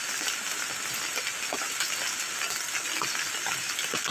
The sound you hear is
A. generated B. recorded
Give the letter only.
B